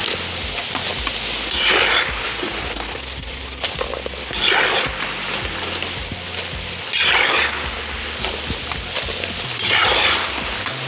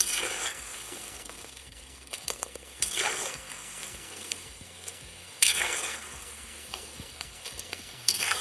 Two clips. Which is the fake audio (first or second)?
second